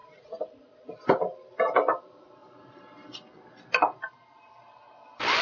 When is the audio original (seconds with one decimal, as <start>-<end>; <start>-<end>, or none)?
0.0-5.4